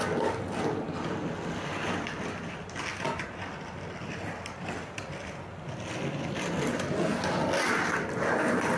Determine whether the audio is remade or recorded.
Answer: recorded